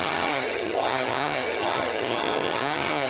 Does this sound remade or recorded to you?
remade